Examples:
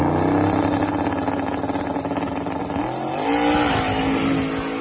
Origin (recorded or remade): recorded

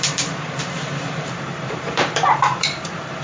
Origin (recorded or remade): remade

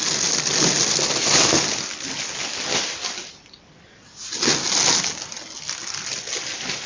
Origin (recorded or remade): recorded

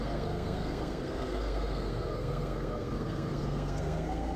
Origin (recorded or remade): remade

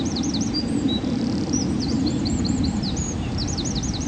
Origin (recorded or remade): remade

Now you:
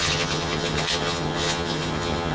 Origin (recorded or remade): remade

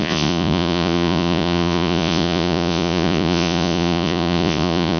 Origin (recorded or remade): remade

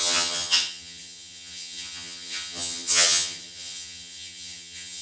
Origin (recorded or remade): remade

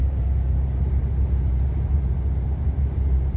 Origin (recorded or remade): remade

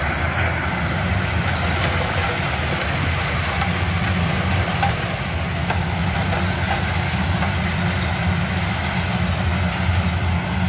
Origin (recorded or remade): recorded